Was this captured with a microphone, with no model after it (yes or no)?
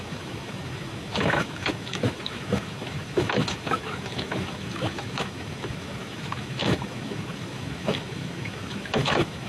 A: no